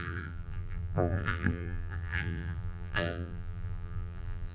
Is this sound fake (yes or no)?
yes